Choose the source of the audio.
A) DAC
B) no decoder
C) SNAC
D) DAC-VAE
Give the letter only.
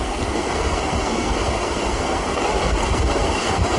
C